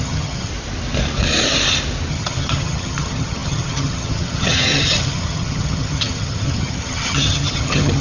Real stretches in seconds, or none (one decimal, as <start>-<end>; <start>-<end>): 0.5-2.1